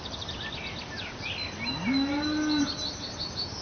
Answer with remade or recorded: recorded